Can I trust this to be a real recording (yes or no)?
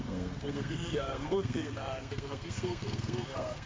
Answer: no